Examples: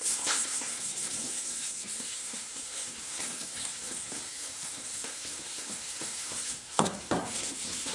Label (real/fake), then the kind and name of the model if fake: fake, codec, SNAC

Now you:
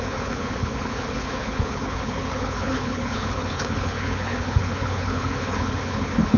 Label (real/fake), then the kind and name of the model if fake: fake, codec, HILCodec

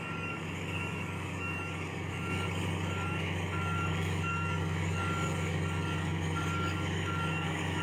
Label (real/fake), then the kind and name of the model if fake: fake, codec, DAC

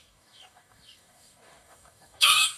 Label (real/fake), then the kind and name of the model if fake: fake, codec, DAC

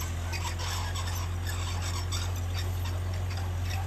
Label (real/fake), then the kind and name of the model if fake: real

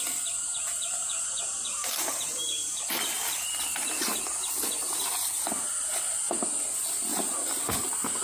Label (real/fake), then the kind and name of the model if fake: real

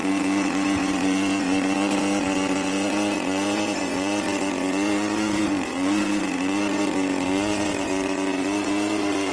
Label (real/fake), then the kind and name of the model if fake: fake, vocoder, Vocos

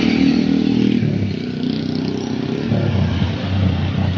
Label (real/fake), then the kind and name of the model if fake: real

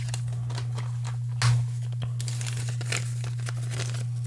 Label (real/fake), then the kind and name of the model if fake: real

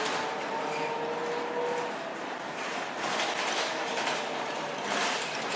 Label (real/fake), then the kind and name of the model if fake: real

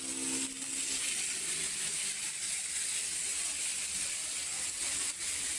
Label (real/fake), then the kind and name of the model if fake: real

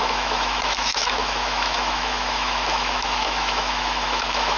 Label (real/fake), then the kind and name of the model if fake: fake, autoencoder, DAC-VAE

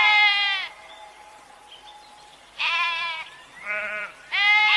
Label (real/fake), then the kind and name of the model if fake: fake, vocoder, BigVGAN v2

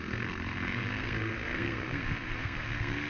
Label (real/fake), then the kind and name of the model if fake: fake, codec, SNAC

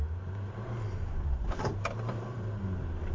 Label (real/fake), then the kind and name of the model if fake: fake, vocoder, BigVGAN v2